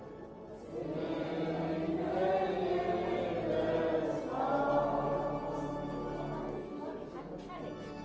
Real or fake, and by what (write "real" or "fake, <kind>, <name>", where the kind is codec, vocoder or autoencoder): real